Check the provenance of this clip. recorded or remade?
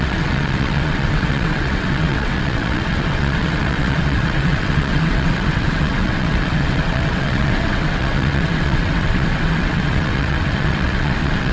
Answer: remade